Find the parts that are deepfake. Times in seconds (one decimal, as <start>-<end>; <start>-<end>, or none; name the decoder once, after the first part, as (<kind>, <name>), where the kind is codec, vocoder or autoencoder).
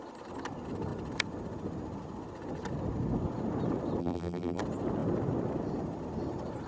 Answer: 4.0-4.6 (vocoder, BigVGAN v2)